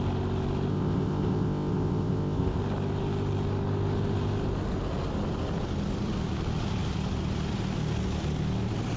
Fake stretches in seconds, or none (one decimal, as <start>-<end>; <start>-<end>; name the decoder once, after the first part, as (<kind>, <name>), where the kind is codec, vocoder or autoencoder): 0.7-2.6 (codec, ZipCodec)